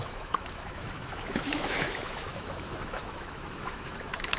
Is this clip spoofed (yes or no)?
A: yes